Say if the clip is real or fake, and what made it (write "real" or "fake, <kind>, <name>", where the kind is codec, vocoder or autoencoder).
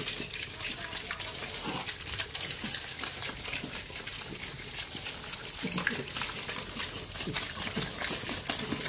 real